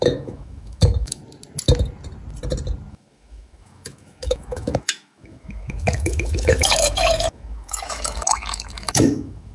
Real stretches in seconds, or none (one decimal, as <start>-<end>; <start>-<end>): 1.2-2.9